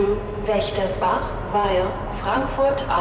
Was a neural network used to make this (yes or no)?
yes